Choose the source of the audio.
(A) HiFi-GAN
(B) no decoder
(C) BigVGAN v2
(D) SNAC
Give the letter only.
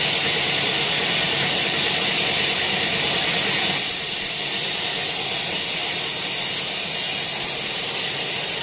B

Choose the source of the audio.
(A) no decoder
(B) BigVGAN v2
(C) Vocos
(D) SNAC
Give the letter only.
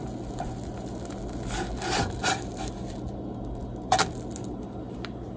A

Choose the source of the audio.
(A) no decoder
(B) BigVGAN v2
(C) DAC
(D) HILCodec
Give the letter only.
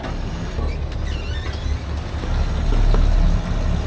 A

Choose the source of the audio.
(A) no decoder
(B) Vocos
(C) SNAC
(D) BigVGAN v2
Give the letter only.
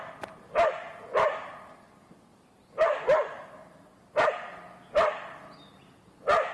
A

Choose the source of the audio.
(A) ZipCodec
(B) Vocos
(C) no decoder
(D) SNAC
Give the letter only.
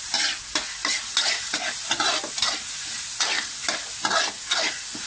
C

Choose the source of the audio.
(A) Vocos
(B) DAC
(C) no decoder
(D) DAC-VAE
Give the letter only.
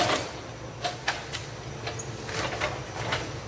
C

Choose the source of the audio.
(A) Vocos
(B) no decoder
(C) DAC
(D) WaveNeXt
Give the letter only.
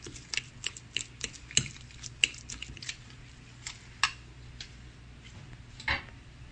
B